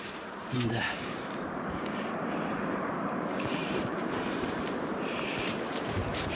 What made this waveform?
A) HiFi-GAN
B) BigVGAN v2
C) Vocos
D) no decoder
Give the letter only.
B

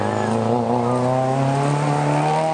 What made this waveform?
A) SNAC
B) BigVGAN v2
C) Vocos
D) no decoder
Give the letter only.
D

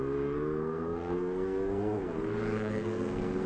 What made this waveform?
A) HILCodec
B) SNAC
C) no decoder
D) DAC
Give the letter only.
B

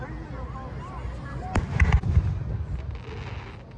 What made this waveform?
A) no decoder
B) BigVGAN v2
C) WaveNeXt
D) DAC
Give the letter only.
A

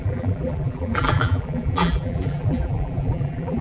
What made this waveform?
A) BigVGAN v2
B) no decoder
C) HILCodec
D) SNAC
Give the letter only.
A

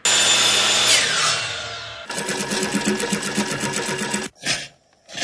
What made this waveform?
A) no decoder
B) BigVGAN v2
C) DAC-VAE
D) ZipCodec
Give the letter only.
A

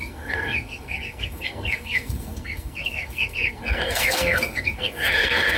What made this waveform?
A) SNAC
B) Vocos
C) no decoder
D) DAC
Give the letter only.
A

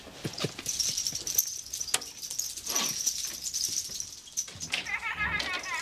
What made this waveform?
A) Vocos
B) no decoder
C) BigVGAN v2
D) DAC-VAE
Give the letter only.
B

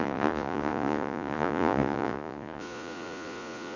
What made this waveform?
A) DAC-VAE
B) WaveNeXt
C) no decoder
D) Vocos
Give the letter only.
D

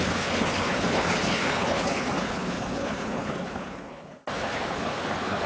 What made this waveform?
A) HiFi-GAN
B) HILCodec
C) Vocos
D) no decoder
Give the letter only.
B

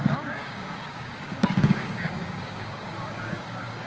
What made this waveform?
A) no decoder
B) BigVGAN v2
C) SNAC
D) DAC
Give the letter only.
D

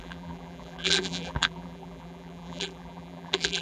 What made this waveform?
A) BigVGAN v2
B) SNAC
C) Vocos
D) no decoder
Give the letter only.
A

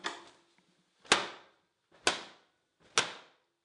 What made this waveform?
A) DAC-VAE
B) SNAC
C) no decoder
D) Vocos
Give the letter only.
C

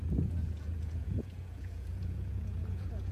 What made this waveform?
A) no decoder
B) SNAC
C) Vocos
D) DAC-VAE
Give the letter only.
C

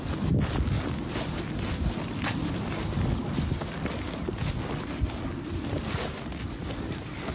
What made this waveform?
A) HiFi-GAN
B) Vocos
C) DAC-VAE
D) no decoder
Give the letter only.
D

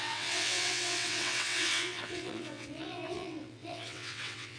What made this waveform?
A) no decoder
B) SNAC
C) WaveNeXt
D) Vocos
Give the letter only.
C